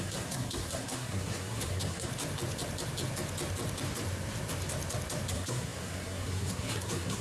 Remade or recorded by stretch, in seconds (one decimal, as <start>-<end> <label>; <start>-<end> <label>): 0.0-2.1 remade; 2.1-5.3 recorded; 5.3-7.2 remade